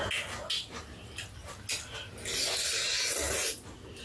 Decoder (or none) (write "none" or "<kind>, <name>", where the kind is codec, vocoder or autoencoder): none